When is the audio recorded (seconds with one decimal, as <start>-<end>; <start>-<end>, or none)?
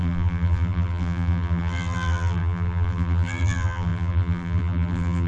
none